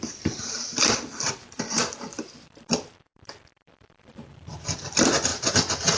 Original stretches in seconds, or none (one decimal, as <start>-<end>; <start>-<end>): none